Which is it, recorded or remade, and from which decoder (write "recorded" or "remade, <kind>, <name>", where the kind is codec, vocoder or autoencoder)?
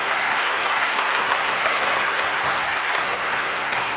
remade, codec, SNAC